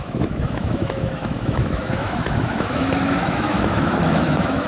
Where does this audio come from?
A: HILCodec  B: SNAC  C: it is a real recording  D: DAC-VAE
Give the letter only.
D